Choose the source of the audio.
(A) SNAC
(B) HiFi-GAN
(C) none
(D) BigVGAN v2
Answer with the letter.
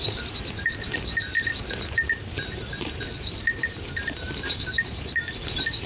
D